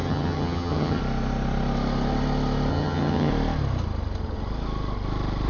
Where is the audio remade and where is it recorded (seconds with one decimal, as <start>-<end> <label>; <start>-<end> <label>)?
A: 0.0-1.0 remade; 1.0-2.7 recorded; 2.7-3.3 remade; 3.3-5.5 recorded